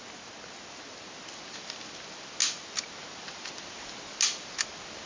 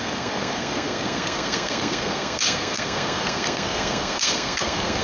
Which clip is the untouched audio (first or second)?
first